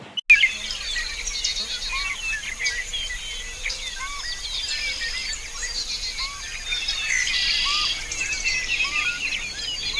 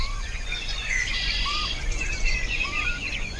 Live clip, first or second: first